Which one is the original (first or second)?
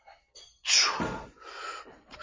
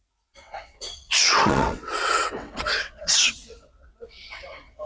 first